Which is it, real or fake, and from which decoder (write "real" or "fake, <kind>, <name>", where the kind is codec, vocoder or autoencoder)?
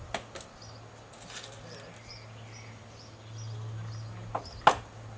real